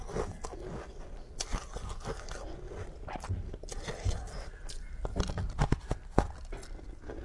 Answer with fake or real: real